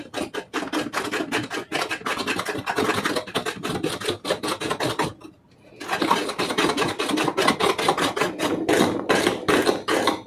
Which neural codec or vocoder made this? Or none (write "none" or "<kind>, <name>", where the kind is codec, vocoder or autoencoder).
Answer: none